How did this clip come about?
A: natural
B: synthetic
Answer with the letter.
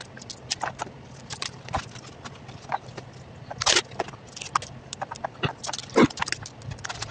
A